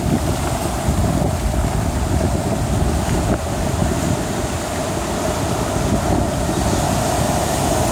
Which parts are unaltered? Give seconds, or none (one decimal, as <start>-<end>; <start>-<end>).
0.0-7.9

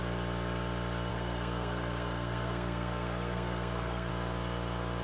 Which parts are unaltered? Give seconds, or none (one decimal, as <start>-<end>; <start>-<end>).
0.0-1.1; 4.1-5.0

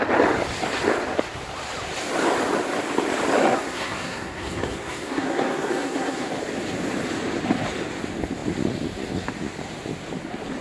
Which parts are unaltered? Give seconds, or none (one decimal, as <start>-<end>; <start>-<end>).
0.0-3.5; 6.3-10.6

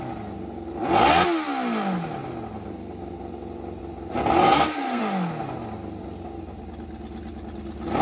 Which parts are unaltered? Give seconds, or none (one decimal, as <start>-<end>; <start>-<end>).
0.0-4.4; 5.0-8.0

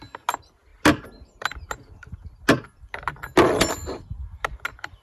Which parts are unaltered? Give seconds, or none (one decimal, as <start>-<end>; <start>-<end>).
0.0-5.0

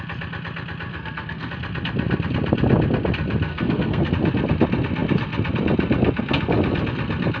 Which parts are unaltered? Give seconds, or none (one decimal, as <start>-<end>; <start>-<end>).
0.0-0.9; 1.5-3.5; 4.1-7.4

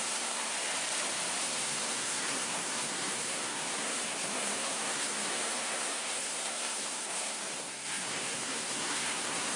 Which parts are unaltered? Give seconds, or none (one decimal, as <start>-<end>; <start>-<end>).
0.5-1.4

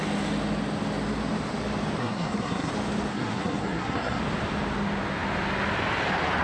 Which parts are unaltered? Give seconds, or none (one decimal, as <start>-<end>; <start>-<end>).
0.0-2.0; 2.7-3.1; 4.2-6.4